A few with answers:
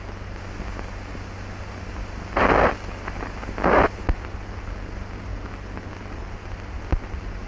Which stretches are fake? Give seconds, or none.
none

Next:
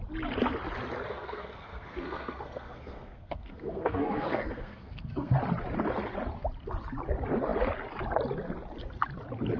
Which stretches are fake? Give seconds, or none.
1.1-5.3